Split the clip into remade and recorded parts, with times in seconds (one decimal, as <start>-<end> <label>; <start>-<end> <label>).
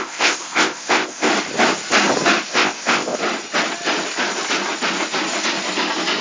0.0-1.3 remade; 1.3-2.5 recorded; 2.5-3.2 remade; 3.2-6.2 recorded